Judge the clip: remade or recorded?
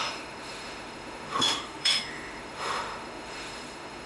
remade